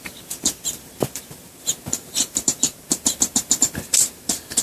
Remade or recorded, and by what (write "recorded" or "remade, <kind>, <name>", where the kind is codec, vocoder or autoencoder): remade, vocoder, BigVGAN v2